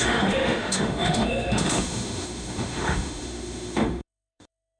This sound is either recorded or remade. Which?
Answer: remade